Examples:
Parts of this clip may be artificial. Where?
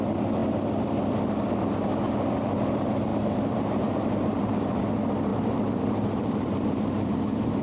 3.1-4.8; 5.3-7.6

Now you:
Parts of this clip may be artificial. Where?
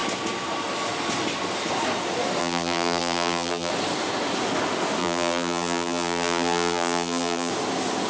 2.4-3.7; 5.0-7.5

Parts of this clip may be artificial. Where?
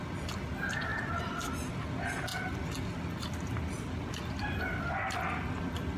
none